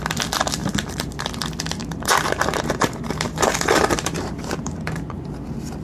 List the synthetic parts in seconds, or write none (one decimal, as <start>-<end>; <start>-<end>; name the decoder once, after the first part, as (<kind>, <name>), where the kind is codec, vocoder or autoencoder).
0.6-1.3 (vocoder, BigVGAN v2); 1.8-5.3